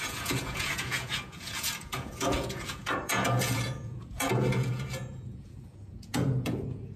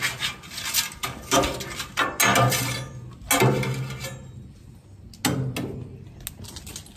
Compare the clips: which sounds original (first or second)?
second